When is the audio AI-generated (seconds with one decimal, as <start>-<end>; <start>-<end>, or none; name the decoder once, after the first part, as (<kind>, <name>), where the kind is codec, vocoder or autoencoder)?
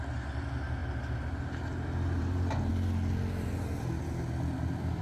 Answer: none